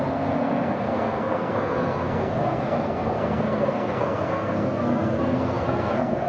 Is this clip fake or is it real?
fake